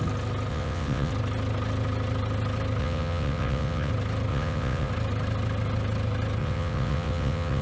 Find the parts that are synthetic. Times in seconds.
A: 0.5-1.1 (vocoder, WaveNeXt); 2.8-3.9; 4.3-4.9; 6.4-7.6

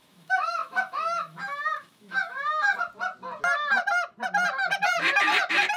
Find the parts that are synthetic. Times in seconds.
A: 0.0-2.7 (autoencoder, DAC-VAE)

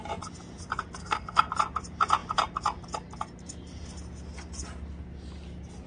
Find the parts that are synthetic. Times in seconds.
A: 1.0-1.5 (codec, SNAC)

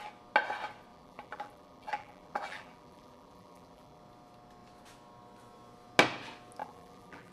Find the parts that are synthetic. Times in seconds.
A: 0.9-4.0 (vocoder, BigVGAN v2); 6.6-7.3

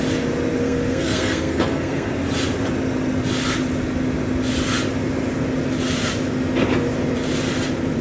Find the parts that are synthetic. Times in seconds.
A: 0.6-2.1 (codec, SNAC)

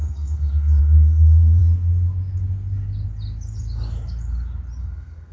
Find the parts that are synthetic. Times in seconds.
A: 0.0-1.6 (codec, SNAC); 4.8-5.3